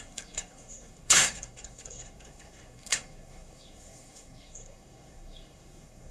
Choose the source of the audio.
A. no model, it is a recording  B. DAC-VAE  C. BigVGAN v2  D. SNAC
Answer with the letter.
D